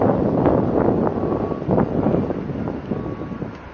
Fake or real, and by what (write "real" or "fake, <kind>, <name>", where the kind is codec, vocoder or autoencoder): real